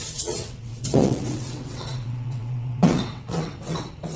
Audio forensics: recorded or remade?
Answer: remade